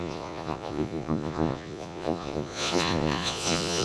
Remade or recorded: remade